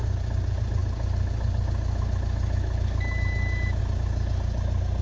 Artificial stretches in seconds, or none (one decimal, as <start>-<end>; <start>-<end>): none